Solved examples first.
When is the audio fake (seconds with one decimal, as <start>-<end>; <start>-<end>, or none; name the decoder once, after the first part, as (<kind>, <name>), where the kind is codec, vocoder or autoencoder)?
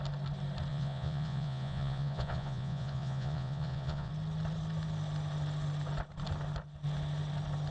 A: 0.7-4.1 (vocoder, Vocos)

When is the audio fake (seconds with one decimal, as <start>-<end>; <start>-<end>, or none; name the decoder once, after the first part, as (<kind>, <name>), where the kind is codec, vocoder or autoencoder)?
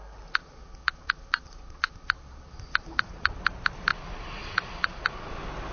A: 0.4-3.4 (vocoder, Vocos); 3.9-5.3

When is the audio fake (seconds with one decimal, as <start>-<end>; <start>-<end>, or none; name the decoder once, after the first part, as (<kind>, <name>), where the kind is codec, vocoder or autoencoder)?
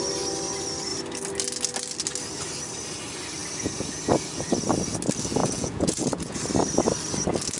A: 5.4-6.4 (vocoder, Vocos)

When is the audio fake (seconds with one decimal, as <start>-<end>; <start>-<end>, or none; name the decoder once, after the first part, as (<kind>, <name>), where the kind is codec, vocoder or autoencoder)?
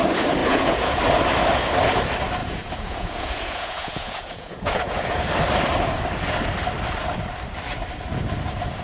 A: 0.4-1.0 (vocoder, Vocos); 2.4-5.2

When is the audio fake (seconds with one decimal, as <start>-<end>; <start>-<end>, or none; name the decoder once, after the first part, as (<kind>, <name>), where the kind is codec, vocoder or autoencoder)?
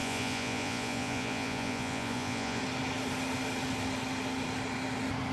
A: 0.0-2.6 (vocoder, Vocos)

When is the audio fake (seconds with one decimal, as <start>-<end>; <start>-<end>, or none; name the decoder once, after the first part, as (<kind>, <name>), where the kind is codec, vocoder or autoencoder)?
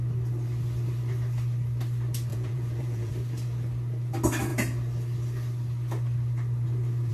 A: 2.3-3.1 (vocoder, Vocos)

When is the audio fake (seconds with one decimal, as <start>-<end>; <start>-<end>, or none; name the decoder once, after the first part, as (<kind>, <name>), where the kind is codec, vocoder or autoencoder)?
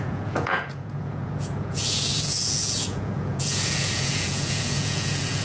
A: 0.0-5.4 (vocoder, Vocos)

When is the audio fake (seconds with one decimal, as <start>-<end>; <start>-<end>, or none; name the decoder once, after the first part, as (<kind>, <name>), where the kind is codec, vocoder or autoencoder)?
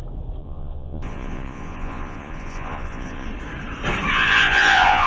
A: 0.4-3.3 (vocoder, Vocos); 4.1-5.1